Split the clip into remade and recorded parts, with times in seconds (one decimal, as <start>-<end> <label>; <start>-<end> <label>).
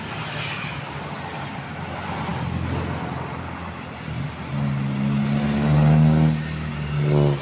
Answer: 0.0-7.4 recorded